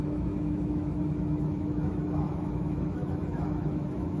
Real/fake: fake